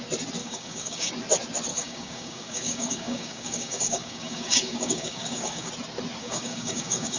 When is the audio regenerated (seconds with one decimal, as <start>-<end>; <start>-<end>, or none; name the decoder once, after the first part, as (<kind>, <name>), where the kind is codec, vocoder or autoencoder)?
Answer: 0.4-1.1 (codec, DAC); 1.7-5.7; 6.2-7.2